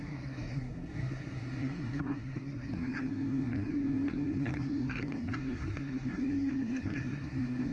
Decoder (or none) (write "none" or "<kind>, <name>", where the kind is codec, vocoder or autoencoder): codec, SNAC